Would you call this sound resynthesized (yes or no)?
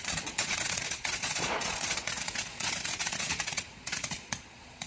yes